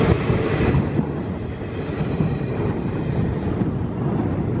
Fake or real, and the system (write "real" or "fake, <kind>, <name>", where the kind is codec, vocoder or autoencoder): real